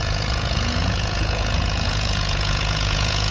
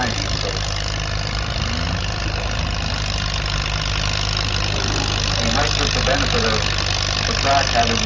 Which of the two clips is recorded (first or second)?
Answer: second